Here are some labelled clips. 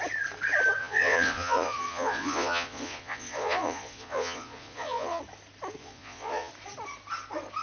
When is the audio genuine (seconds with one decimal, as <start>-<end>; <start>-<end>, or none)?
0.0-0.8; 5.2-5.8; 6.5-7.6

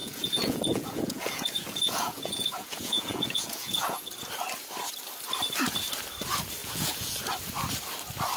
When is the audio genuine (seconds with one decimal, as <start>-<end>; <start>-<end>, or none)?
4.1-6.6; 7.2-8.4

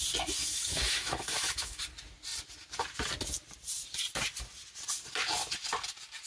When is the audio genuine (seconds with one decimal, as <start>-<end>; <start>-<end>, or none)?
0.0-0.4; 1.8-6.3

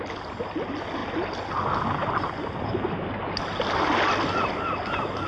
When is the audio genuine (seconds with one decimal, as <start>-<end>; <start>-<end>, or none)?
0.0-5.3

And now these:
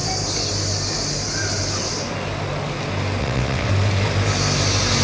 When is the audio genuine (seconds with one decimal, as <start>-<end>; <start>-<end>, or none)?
0.0-3.2; 3.7-5.0

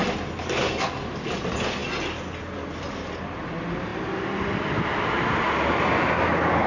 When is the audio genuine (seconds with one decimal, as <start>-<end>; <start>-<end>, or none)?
0.0-6.7

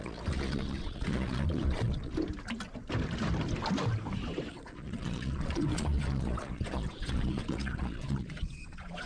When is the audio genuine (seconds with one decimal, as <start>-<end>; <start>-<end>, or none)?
2.1-4.5

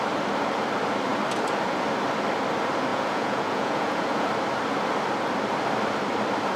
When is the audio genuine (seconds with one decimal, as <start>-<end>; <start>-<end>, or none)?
0.0-2.9; 4.3-6.6